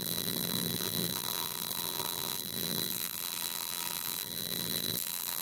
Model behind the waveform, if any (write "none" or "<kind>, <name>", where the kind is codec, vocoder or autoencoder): vocoder, BigVGAN v2